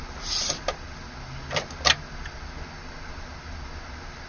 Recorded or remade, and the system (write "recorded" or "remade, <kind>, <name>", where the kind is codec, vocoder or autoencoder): recorded